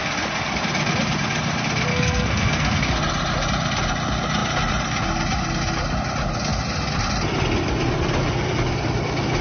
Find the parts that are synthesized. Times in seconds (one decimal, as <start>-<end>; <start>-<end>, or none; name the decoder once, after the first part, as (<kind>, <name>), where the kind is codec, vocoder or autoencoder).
1.9-2.9 (codec, SNAC)